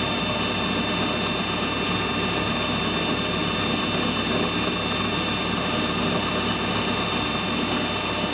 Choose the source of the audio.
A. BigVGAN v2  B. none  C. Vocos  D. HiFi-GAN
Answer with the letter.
B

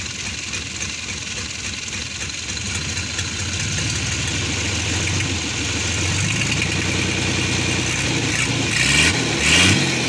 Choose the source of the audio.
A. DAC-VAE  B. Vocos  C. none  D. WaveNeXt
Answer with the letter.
C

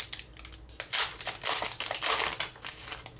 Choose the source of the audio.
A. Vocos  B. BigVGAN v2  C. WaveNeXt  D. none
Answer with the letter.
D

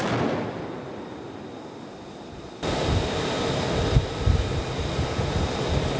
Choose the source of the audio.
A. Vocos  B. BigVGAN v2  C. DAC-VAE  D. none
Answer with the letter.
D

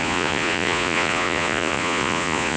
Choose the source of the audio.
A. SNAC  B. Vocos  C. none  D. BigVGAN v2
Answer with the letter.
B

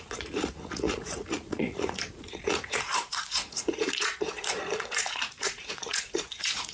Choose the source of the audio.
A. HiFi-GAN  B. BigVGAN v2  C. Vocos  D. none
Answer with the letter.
C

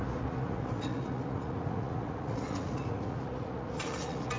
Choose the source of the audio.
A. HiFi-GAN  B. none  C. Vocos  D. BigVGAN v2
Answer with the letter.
C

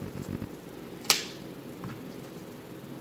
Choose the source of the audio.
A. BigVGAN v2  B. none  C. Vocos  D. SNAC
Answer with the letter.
B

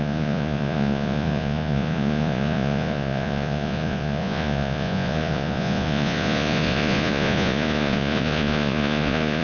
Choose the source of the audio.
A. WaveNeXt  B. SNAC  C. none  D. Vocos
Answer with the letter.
D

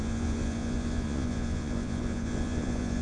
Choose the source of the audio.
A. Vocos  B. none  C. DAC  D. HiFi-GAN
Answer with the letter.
A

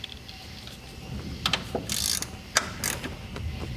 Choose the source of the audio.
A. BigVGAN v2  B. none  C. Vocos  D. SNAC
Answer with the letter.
B